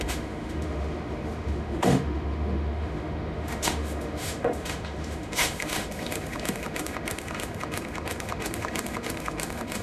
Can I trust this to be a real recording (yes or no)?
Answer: no